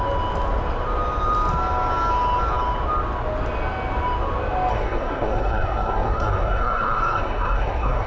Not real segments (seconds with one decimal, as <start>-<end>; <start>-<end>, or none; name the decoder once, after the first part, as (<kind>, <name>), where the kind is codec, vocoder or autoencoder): 4.7-8.1 (codec, SNAC)